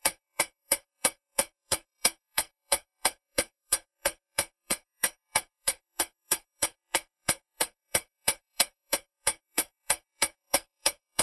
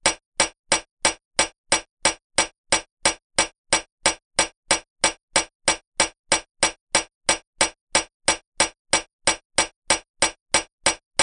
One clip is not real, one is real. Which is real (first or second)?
second